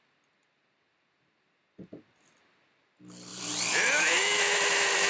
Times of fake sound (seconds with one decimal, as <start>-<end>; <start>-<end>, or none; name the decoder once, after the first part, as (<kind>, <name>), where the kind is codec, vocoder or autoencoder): 3.3-5.1 (vocoder, BigVGAN v2)